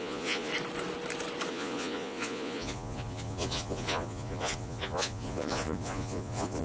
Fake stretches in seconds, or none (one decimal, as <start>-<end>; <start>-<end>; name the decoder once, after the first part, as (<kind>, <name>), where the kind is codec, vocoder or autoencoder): 0.0-0.5 (vocoder, Vocos); 1.5-6.6